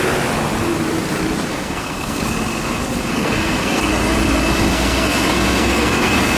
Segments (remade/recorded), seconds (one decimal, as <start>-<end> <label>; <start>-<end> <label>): 0.0-1.5 recorded; 1.5-2.2 remade; 2.2-3.1 recorded; 3.1-3.9 remade; 3.9-4.7 recorded; 4.7-6.4 remade